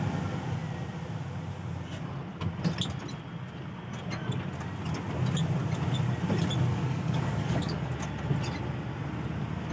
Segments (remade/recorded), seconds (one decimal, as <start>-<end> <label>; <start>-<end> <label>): 0.0-6.7 recorded; 6.7-7.9 remade; 7.9-9.7 recorded